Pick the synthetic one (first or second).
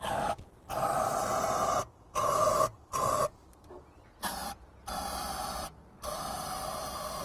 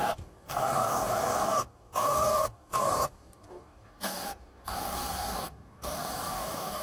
second